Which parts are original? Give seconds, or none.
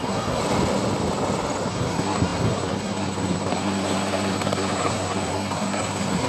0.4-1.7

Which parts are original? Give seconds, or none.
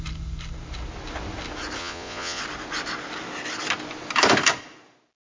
0.0-1.8; 2.4-5.3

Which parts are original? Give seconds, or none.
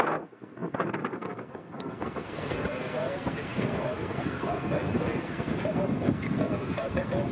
none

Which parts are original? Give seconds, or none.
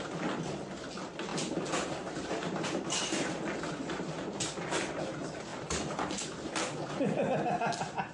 0.0-1.3; 5.0-5.5; 6.2-8.1